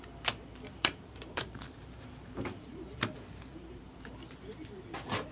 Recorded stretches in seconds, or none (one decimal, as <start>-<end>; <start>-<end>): 0.0-0.7; 3.9-5.3